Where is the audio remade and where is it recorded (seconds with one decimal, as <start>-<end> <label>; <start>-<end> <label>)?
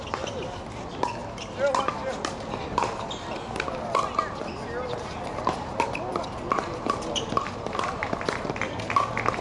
0.0-9.4 recorded